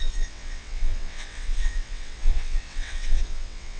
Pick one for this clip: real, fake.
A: fake